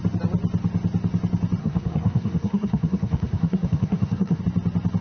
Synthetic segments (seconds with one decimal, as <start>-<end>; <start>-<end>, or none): 1.6-4.4